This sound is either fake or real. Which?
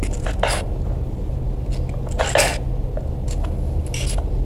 real